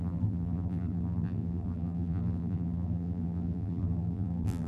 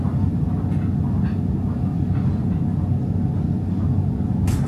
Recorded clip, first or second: second